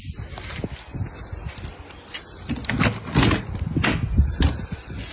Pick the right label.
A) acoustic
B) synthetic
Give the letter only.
A